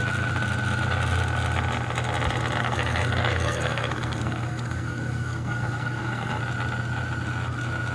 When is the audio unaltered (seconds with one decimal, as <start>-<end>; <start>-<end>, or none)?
0.0-2.6; 6.4-7.9